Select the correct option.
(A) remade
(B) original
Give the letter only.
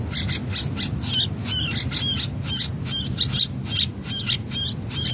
B